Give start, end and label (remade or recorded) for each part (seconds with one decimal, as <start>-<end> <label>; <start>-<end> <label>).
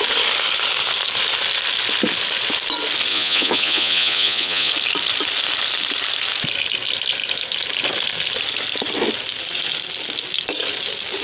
0.0-3.1 recorded; 3.1-4.7 remade; 4.7-11.2 recorded